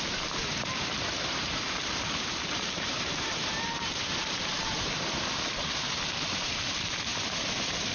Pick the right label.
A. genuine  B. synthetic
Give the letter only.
B